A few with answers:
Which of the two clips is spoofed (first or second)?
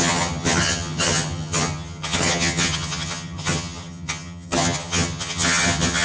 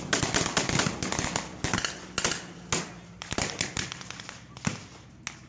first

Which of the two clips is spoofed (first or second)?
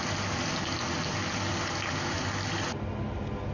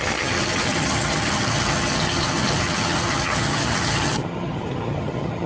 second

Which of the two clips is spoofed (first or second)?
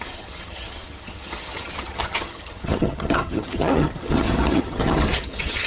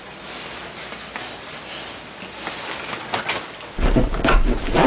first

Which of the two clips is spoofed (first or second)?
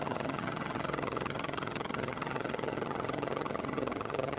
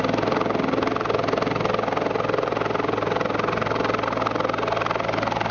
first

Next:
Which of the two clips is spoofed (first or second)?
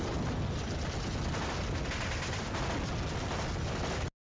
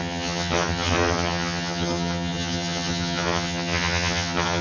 second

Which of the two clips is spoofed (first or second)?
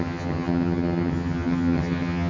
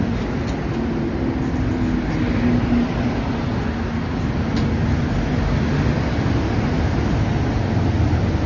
first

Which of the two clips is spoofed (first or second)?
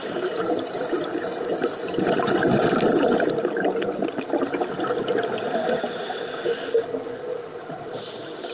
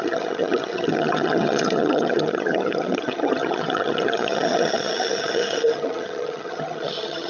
second